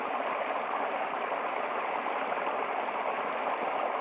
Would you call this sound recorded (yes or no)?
yes